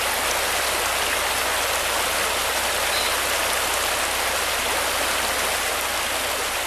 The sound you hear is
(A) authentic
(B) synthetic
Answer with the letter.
A